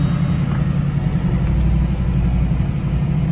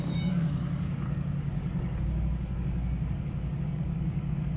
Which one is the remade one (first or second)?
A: second